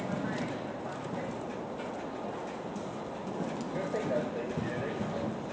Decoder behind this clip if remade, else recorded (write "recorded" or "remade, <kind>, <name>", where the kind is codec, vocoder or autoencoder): recorded